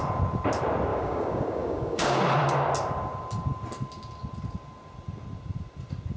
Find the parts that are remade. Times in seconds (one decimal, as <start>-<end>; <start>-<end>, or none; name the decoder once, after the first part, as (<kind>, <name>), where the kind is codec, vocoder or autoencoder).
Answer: 0.9-2.2 (codec, DAC)